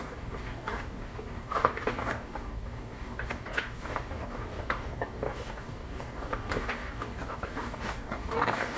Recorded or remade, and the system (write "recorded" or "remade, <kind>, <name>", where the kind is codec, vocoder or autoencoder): remade, codec, DAC